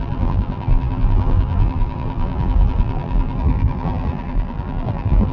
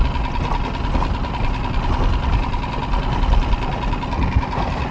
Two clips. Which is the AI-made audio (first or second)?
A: first